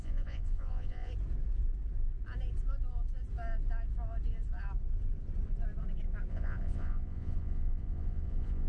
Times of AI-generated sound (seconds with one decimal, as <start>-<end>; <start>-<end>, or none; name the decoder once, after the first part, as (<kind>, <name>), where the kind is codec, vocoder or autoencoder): 0.0-1.1 (vocoder, Vocos); 6.3-8.7